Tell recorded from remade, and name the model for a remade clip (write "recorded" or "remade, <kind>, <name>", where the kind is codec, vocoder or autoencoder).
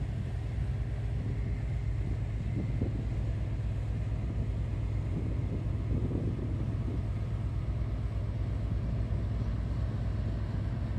recorded